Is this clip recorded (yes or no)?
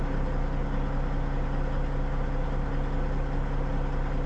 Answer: yes